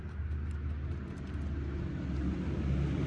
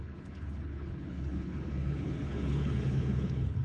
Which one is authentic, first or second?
first